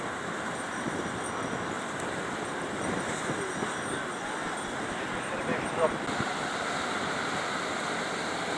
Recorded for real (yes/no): yes